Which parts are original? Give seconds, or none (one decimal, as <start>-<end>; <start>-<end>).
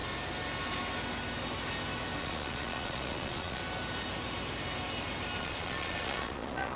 0.0-2.2; 3.6-5.4